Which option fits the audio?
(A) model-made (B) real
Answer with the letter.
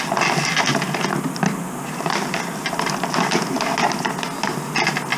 B